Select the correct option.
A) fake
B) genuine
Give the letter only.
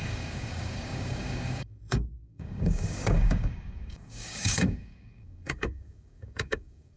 A